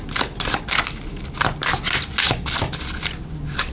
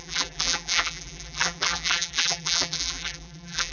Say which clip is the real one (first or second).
first